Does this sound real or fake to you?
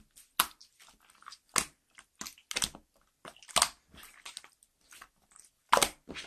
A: real